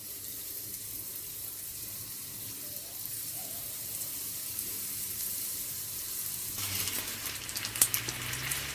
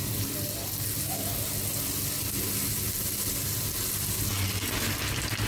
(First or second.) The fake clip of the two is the first